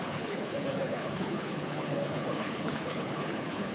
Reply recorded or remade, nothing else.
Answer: remade